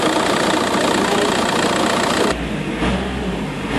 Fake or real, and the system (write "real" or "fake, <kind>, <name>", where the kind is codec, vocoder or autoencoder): real